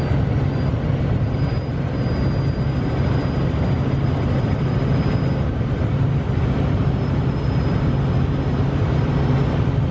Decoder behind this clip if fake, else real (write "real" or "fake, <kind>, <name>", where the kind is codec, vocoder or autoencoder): real